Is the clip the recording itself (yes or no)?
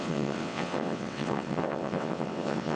no